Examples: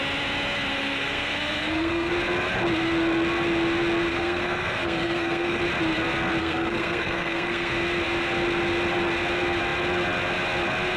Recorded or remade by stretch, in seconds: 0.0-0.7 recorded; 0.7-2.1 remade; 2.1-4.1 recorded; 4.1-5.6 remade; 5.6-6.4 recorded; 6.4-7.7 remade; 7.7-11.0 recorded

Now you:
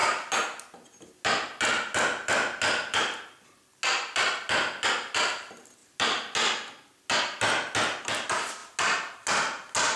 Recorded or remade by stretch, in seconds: 0.0-10.0 recorded

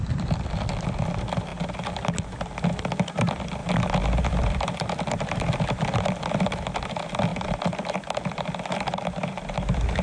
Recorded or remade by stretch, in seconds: 0.0-1.5 remade; 1.5-2.2 recorded; 2.2-3.6 remade; 3.6-4.2 recorded; 4.2-10.0 remade

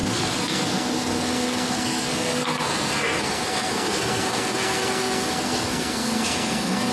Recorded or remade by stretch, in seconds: 0.0-6.9 remade